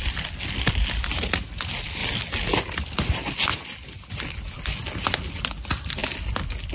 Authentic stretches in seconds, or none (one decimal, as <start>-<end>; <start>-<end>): 0.0-6.7